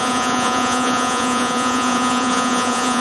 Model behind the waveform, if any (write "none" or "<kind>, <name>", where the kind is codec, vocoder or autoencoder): vocoder, Vocos